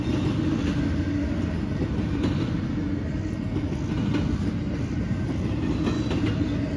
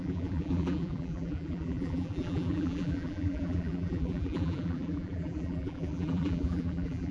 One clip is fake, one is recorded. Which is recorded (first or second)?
first